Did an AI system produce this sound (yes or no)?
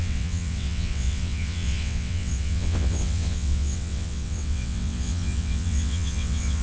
yes